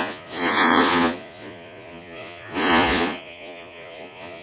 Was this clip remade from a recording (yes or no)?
yes